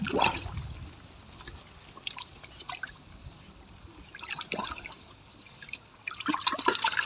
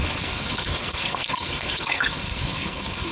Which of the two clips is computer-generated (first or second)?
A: second